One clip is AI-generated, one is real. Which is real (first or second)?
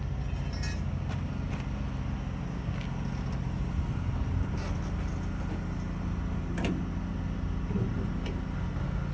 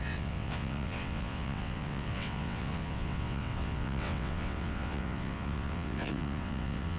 first